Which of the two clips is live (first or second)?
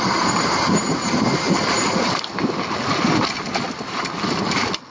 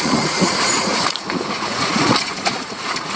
first